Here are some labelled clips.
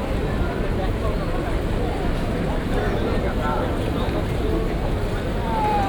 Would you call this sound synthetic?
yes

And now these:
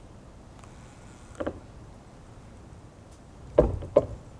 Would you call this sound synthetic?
no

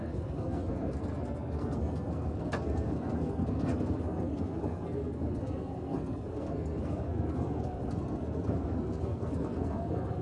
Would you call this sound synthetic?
yes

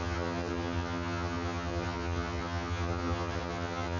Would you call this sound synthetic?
yes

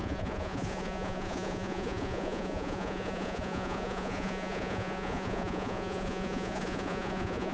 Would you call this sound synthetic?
yes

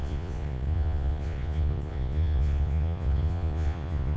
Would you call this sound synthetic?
yes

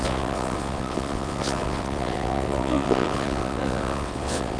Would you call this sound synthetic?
yes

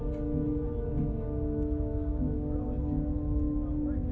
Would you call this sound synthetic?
no